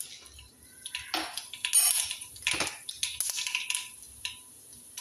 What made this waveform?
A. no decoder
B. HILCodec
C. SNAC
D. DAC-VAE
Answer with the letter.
A